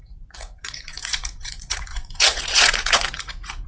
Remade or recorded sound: remade